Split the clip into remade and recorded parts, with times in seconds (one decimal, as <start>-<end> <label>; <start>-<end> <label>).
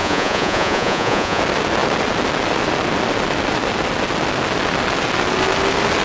0.0-1.4 remade; 1.4-6.0 recorded